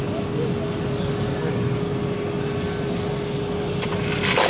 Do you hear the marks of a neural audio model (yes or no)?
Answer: no